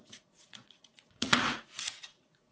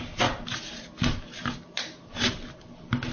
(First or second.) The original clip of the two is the second